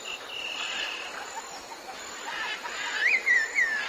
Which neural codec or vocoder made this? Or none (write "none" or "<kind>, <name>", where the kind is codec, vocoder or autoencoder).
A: none